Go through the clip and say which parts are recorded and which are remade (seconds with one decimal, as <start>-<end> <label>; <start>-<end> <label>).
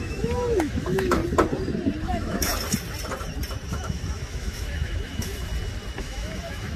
0.0-1.2 remade; 1.2-2.0 recorded; 2.0-2.5 remade; 2.5-3.7 recorded; 3.7-5.5 remade; 5.5-6.0 recorded; 6.0-6.8 remade